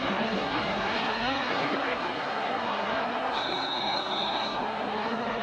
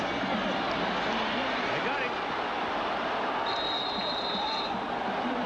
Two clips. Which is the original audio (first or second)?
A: second